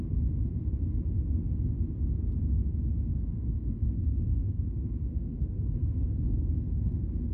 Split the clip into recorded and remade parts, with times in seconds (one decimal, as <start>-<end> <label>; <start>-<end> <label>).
0.0-3.1 recorded; 3.1-7.3 remade